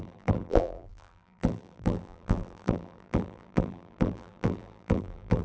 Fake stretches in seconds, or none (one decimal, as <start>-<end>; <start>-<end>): 0.0-5.4